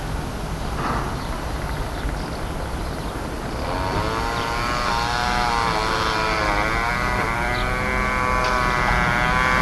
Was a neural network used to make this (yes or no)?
no